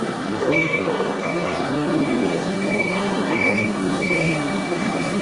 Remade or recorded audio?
remade